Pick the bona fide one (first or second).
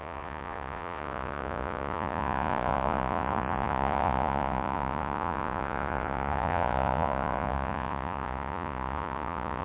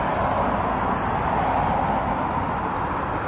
second